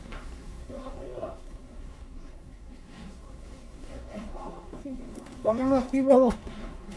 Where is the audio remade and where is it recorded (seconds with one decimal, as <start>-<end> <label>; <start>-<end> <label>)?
0.0-7.0 remade